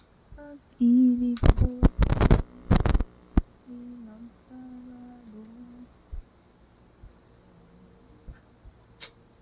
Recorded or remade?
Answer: recorded